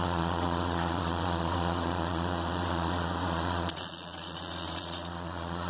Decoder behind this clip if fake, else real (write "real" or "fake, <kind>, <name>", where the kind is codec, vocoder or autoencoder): fake, vocoder, Vocos